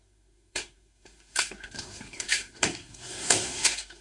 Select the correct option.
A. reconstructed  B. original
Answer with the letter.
A